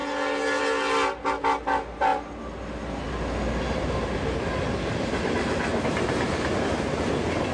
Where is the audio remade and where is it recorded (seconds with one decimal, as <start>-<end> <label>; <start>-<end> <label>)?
0.0-7.5 recorded